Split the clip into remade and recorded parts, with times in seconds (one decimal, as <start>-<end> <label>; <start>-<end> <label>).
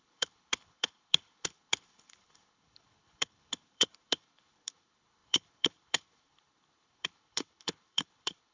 0.0-8.5 remade